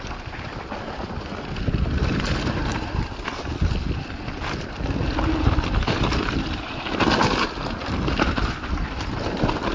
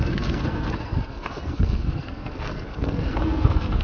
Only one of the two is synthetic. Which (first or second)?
second